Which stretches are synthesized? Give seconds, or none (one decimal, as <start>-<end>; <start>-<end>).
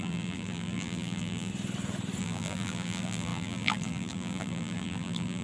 0.0-1.5; 2.2-5.4